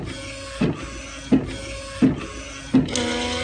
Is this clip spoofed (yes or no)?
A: no